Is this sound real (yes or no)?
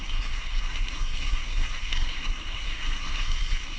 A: no